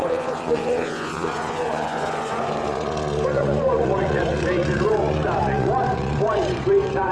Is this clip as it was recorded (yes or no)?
no